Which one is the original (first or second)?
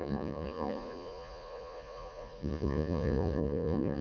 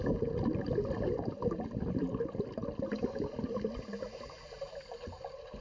second